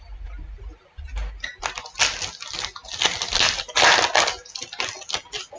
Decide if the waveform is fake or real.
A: real